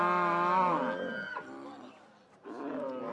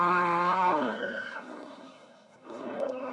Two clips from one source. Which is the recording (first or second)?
first